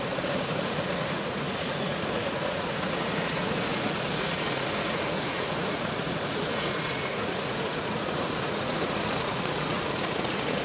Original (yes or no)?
no